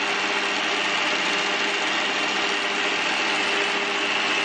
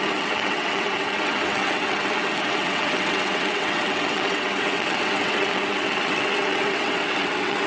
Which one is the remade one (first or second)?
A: second